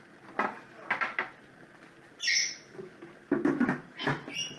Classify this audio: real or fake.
real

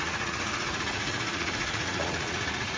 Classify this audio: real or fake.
fake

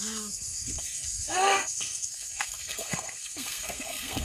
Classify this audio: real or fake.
fake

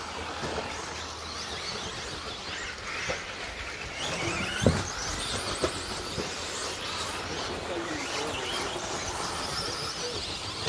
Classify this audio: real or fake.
real